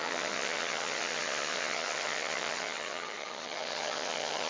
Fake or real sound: fake